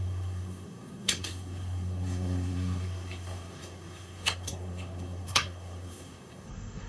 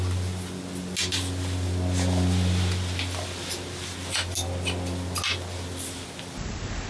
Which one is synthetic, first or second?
first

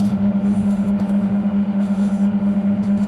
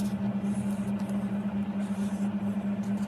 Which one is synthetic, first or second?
first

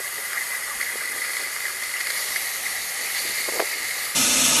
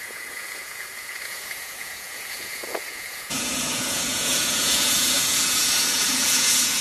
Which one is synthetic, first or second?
second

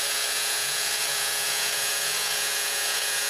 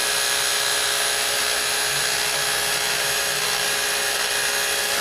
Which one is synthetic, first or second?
first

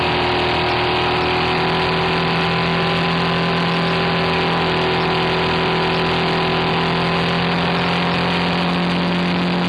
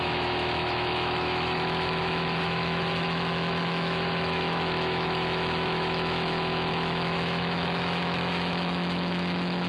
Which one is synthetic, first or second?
second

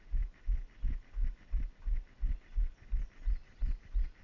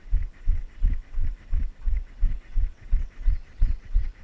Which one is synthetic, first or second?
second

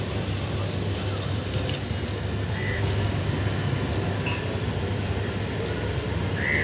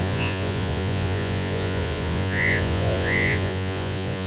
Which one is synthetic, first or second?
second